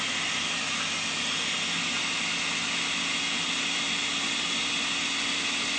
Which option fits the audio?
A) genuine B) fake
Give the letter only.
A